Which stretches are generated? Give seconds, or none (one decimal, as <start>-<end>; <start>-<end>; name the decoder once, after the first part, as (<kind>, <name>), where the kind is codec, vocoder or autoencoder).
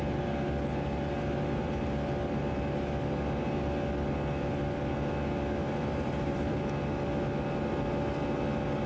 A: 5.6-6.6 (vocoder, BigVGAN v2)